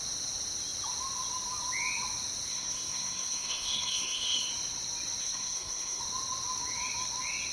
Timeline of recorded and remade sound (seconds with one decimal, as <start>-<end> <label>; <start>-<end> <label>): 0.0-2.5 recorded; 2.5-4.5 remade; 4.5-5.2 recorded; 5.2-6.0 remade; 6.0-7.5 recorded

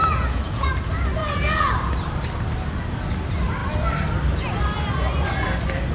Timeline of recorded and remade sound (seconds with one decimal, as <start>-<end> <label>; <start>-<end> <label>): 0.0-0.7 remade; 0.7-5.9 recorded

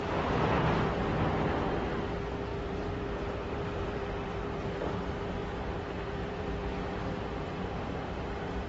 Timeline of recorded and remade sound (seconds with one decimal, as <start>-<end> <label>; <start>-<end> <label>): 0.0-2.5 recorded; 2.5-4.9 remade; 4.9-5.4 recorded; 5.4-6.5 remade; 6.5-8.7 recorded

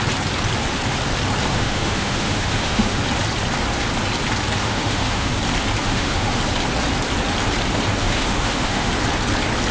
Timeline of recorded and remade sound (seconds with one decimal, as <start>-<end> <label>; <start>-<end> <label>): 0.0-1.5 recorded; 1.5-3.0 remade; 3.0-4.6 recorded; 4.6-5.3 remade; 5.3-5.8 recorded; 5.8-6.4 remade; 6.4-8.0 recorded; 8.0-8.9 remade; 8.9-9.7 recorded

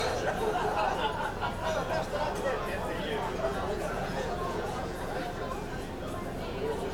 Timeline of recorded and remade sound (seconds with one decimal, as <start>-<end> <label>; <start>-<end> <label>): 0.0-3.5 recorded; 3.5-5.1 remade; 5.1-6.9 recorded